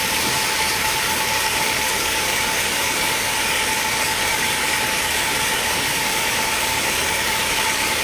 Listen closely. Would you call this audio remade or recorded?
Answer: remade